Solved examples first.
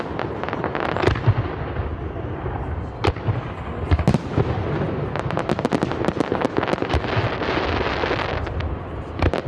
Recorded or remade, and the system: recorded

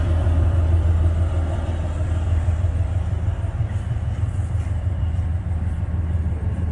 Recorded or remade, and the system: remade, vocoder, BigVGAN v2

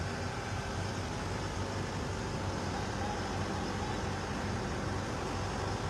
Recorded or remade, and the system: recorded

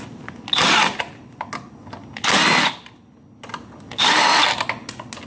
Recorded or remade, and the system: recorded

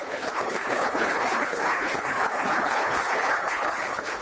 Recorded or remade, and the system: remade, codec, HILCodec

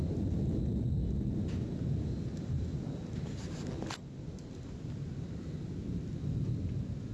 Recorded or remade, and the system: recorded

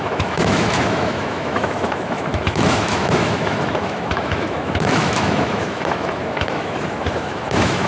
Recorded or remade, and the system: remade, autoencoder, DAC-VAE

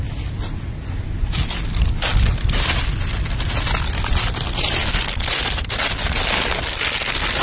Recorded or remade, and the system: recorded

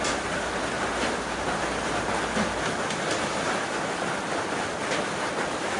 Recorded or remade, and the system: recorded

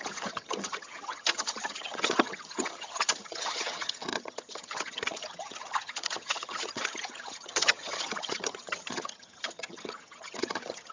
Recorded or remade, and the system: remade, vocoder, HiFi-GAN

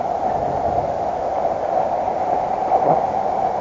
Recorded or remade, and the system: recorded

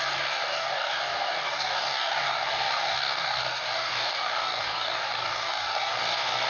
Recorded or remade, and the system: remade, codec, DAC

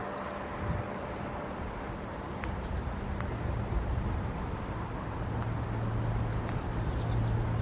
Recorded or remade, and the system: recorded